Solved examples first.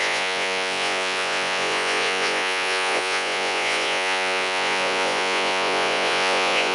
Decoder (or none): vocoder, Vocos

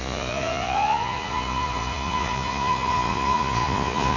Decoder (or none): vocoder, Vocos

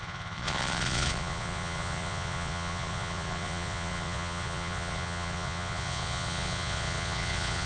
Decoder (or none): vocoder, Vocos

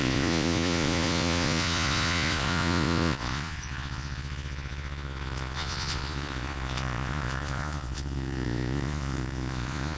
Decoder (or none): vocoder, Vocos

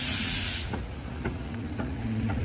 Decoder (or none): vocoder, Vocos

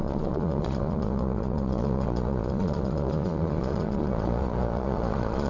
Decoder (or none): vocoder, Vocos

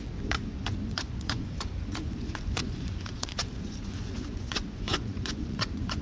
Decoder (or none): vocoder, Vocos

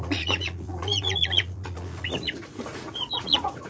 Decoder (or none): vocoder, Vocos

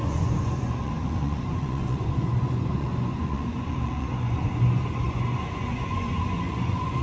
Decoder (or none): vocoder, Vocos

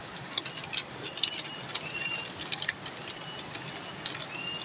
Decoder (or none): none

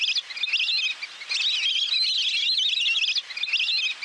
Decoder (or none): none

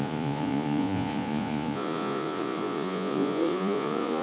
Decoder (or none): vocoder, Vocos